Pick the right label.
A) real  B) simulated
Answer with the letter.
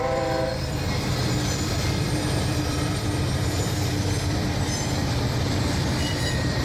B